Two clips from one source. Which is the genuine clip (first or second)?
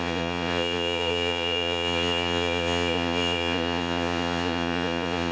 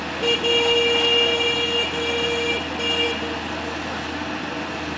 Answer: second